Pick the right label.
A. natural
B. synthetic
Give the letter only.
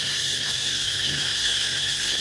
B